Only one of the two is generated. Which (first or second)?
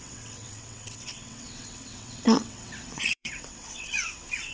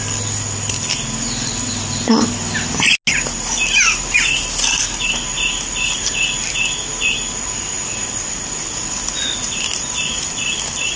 first